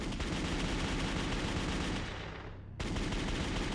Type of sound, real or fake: real